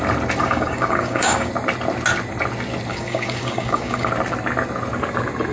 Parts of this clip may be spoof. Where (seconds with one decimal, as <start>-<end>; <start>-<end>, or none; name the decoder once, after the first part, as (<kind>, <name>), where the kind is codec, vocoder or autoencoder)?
0.4-1.5 (codec, DAC); 2.9-4.1